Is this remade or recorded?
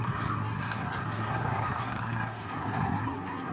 remade